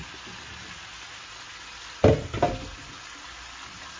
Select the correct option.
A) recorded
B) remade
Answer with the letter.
A